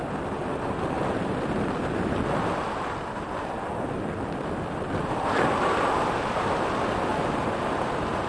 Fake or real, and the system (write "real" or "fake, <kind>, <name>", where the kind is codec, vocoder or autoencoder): real